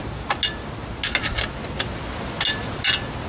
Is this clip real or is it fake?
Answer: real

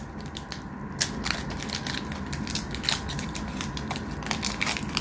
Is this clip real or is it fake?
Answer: real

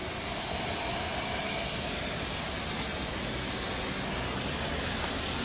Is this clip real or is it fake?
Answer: real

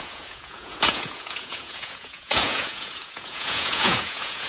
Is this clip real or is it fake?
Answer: fake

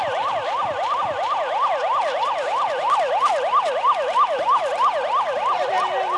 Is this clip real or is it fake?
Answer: real